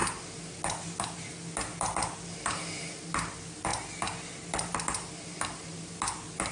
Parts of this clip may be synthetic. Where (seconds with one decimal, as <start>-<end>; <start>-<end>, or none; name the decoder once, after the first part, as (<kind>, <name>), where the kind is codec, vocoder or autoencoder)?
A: none